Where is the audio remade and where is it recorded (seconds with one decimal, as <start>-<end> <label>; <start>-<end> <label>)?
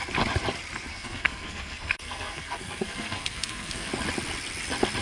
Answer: 0.0-0.9 recorded; 0.9-3.9 remade; 3.9-5.0 recorded